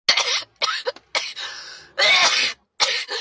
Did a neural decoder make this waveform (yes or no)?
no